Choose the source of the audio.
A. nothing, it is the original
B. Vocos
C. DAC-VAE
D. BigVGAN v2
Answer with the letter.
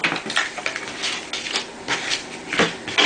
A